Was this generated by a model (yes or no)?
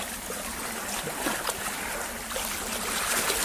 no